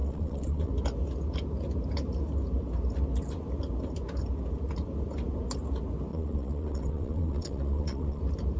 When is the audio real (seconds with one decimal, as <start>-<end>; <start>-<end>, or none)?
0.7-6.1; 8.2-8.6

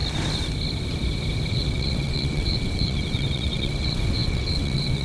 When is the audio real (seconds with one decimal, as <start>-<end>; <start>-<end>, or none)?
0.0-1.5

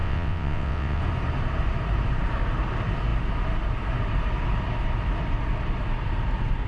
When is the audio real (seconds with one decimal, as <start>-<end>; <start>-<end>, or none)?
1.0-6.7

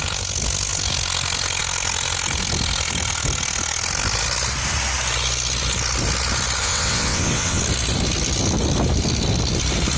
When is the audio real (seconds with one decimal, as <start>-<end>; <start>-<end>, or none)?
0.0-6.6; 7.6-10.0

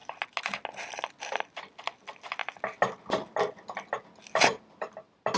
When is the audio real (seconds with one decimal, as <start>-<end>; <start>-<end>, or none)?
0.0-5.4

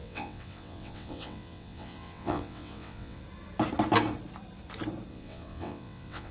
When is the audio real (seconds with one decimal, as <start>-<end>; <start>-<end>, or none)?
3.2-5.1

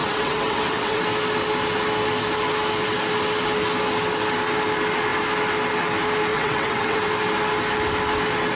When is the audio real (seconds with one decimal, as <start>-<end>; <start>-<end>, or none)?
1.0-6.3; 7.0-8.5